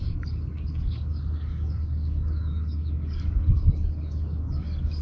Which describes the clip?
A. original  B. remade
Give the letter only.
B